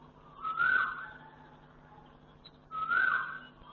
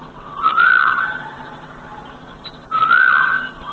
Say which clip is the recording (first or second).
first